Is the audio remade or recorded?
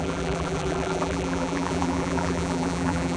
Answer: remade